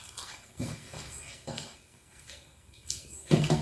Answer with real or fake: fake